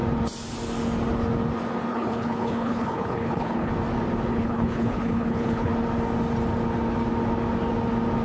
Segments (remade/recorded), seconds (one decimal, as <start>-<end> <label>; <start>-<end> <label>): 0.0-1.9 recorded; 1.9-3.7 remade; 3.7-4.3 recorded; 4.3-5.7 remade; 5.7-8.2 recorded